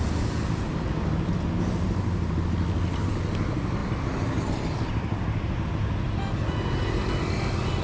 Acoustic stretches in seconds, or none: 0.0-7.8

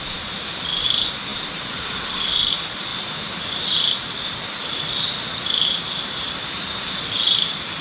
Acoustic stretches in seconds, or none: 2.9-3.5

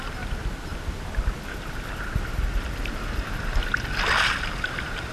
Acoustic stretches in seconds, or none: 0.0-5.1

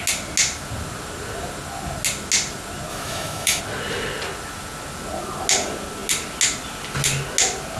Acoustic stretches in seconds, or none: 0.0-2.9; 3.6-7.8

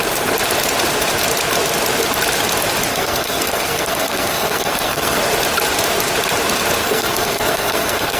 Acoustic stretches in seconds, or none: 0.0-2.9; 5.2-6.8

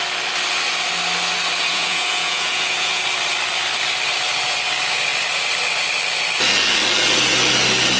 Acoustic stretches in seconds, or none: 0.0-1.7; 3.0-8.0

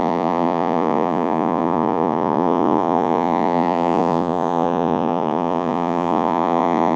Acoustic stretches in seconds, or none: none